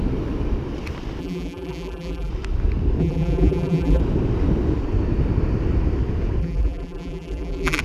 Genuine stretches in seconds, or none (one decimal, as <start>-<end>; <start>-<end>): 0.0-1.2; 2.3-3.0; 4.0-6.4